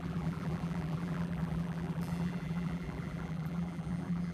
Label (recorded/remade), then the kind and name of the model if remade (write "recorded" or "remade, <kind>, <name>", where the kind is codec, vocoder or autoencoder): remade, vocoder, BigVGAN v2